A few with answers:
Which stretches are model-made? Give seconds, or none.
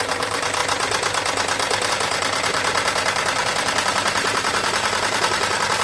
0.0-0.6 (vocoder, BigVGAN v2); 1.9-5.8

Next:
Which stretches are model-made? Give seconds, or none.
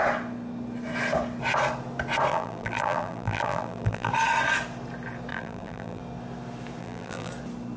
2.3-4.1 (vocoder, BigVGAN v2); 5.3-6.0; 6.8-7.3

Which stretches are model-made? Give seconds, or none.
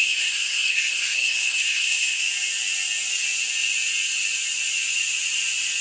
0.0-2.2 (codec, SNAC)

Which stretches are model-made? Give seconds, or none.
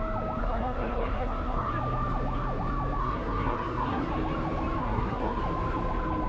0.4-1.7 (codec, SNAC); 3.0-4.1; 4.8-5.4